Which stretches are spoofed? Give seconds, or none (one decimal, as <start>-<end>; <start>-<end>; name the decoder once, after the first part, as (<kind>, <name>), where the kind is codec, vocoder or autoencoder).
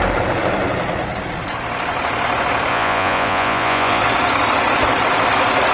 2.7-4.0 (vocoder, Vocos)